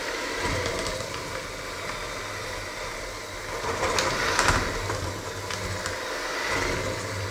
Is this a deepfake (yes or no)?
no